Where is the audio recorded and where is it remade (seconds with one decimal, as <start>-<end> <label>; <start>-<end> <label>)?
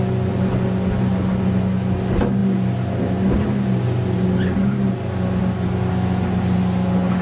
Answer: 0.0-7.2 recorded